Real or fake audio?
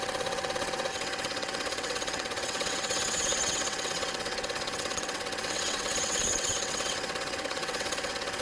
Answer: fake